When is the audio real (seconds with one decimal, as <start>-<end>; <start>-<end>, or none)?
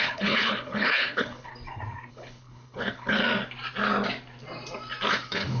1.5-2.1; 3.2-5.1